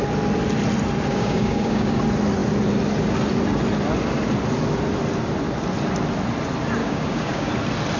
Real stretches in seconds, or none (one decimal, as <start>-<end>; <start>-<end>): 0.0-1.1; 2.0-6.8; 7.5-8.0